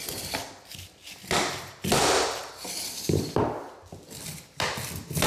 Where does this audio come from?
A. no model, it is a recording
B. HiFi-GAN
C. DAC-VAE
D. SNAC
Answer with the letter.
A